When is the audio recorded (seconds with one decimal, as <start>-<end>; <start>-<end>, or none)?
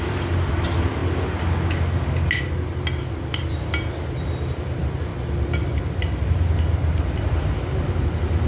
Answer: 1.0-4.5; 5.1-6.9